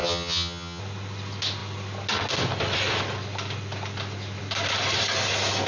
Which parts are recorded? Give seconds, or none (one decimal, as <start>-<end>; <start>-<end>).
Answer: 0.8-5.7